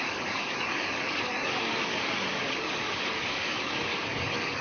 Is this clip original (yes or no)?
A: no